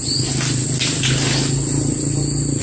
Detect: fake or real real